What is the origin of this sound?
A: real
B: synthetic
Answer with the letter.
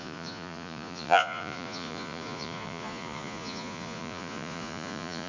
B